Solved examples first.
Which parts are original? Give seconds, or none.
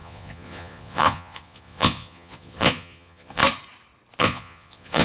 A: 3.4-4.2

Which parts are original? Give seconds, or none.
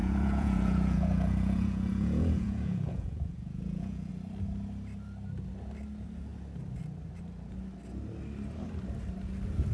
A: 4.1-9.7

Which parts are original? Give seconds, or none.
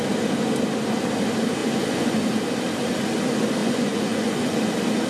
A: 0.0-1.6; 2.2-3.6; 4.6-5.1